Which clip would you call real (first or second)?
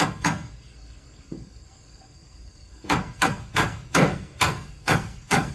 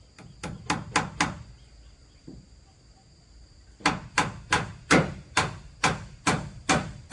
second